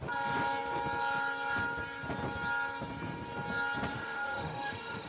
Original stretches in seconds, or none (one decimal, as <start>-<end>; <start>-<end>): 0.0-3.9